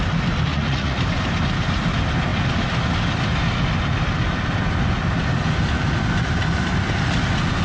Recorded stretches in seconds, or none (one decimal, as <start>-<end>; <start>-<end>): 0.0-0.5; 1.0-7.6